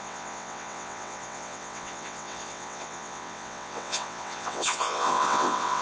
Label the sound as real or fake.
fake